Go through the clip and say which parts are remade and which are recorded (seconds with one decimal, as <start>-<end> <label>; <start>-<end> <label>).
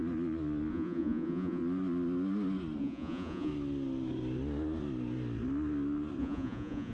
0.0-0.7 recorded; 0.7-1.6 remade; 1.6-2.8 recorded; 2.8-3.5 remade; 3.5-6.2 recorded; 6.2-6.9 remade